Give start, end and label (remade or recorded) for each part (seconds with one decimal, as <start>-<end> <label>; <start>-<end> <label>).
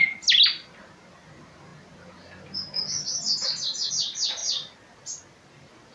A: 0.0-5.9 recorded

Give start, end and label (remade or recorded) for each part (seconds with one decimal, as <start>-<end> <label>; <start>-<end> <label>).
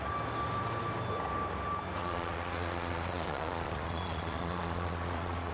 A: 0.0-2.0 recorded; 2.0-5.5 remade